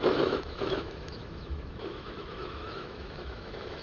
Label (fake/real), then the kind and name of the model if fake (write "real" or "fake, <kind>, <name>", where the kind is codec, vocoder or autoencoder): fake, autoencoder, DAC-VAE